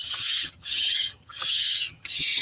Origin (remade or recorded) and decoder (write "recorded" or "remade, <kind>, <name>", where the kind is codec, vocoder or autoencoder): remade, vocoder, HiFi-GAN